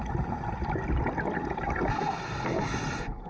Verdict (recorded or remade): recorded